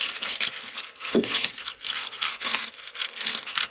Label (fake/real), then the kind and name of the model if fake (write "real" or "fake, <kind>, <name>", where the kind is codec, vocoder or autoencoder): fake, codec, SNAC